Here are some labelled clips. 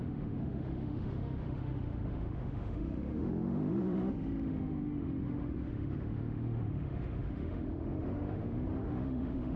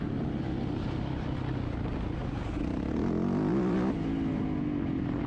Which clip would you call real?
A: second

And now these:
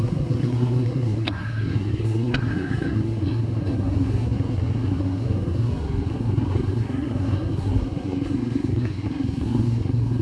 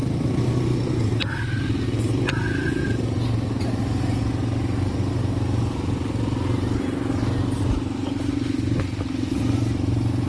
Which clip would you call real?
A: second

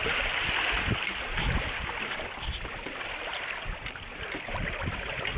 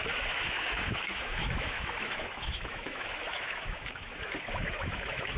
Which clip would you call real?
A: first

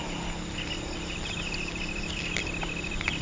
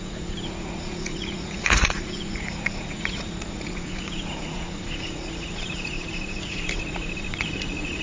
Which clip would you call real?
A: first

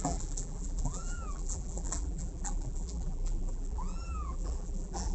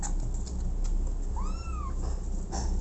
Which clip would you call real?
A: second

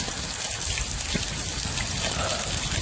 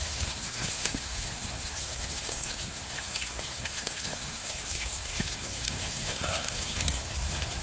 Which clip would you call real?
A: first